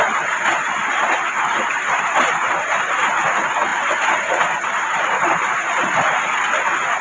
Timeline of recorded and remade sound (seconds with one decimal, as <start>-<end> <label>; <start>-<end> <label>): 0.0-1.5 recorded; 1.5-2.9 remade; 2.9-3.7 recorded; 3.7-6.2 remade; 6.2-7.0 recorded